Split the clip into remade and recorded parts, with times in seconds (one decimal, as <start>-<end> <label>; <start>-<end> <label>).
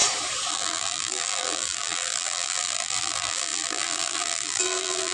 0.0-0.5 recorded; 0.5-5.1 remade